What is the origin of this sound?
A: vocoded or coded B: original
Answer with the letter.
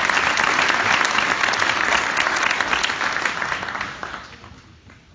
B